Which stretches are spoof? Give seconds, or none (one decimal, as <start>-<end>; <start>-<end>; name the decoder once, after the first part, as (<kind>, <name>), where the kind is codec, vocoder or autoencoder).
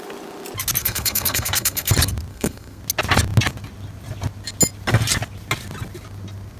0.8-1.9 (codec, SNAC); 2.3-2.8